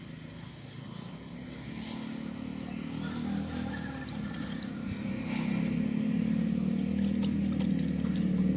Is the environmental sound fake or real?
real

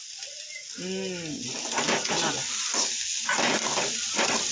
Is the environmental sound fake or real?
real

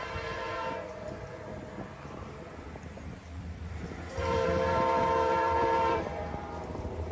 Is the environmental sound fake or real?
fake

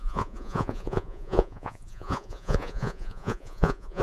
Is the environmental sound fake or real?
fake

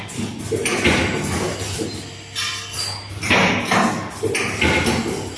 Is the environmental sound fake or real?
real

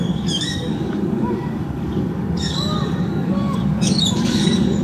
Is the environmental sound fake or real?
fake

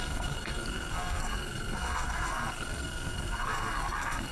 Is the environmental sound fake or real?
fake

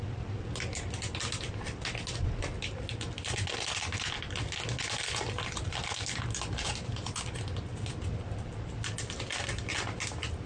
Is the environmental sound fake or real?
real